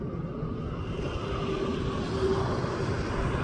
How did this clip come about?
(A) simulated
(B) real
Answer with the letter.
B